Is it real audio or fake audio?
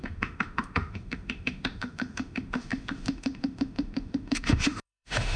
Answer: fake